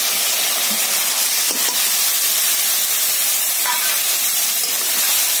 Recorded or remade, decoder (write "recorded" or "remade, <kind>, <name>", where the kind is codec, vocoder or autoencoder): recorded